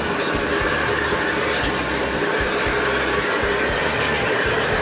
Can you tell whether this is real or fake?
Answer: real